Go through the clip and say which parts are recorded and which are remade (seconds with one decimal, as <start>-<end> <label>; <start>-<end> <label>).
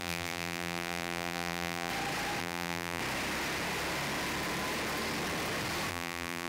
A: 0.0-1.9 remade; 1.9-2.4 recorded; 2.4-3.0 remade; 3.0-5.9 recorded; 5.9-6.5 remade